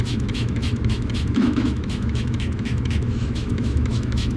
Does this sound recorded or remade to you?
remade